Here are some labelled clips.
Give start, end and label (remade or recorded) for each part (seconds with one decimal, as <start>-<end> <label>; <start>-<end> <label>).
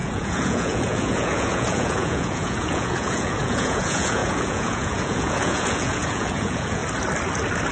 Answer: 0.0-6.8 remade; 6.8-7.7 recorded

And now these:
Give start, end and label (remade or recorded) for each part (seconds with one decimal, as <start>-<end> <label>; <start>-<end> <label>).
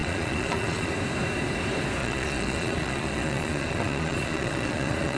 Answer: 0.0-0.9 remade; 0.9-2.0 recorded; 2.0-5.2 remade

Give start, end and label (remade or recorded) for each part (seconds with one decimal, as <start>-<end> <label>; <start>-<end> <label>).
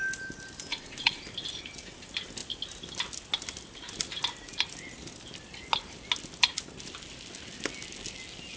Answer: 0.0-0.7 recorded; 0.7-1.2 remade; 1.2-8.6 recorded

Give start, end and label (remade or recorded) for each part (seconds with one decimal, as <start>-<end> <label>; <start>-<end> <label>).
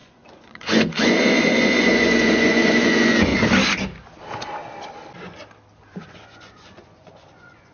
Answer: 0.0-3.3 remade; 3.3-5.8 recorded; 5.8-7.7 remade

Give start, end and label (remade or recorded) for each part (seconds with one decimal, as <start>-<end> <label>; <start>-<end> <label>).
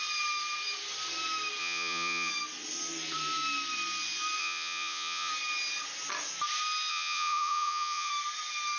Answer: 0.0-1.6 recorded; 1.6-2.3 remade; 2.3-4.4 recorded; 4.4-5.3 remade; 5.3-6.9 recorded; 6.9-8.1 remade; 8.1-8.8 recorded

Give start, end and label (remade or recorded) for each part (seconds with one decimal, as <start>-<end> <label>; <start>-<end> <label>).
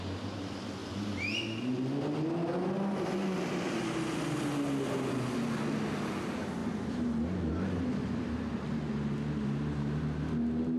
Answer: 0.0-10.8 recorded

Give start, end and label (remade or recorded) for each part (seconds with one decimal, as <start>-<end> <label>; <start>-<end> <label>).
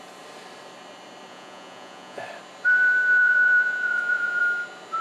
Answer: 0.0-1.3 recorded; 1.3-2.2 remade; 2.2-3.2 recorded; 3.2-4.4 remade; 4.4-5.0 recorded